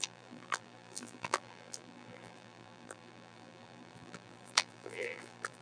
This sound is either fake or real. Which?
fake